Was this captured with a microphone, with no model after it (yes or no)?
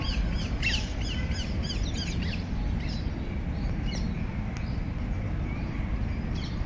yes